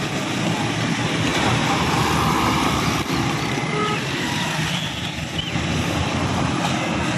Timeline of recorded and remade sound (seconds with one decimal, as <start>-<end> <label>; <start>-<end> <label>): 0.0-1.3 recorded; 1.3-1.9 remade; 1.9-7.2 recorded